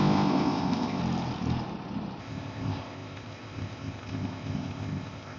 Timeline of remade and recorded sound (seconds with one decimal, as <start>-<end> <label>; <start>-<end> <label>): 0.0-1.0 remade; 1.0-2.2 recorded; 2.2-5.4 remade